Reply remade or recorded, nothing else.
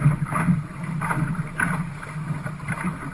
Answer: recorded